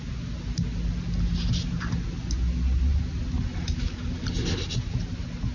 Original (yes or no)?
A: yes